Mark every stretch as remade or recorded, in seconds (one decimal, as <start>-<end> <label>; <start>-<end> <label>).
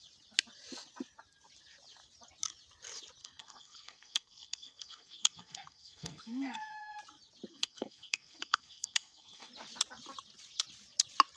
0.0-3.2 recorded; 3.2-7.0 remade; 7.0-7.5 recorded; 7.5-9.5 remade; 9.5-11.4 recorded